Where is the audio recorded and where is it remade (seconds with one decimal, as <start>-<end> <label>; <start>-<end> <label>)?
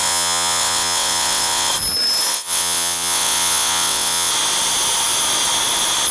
0.0-1.7 remade; 1.7-2.3 recorded; 2.3-4.3 remade; 4.3-6.1 recorded